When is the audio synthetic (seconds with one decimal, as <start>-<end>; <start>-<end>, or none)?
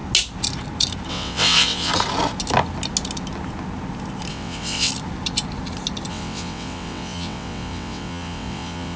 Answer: 1.1-1.9; 4.3-4.9; 6.1-9.0